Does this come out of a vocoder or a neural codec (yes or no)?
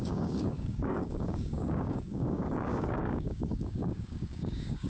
yes